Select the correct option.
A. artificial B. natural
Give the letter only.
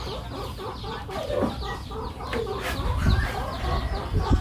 B